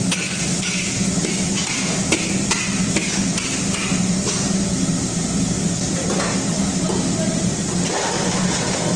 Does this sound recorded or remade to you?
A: recorded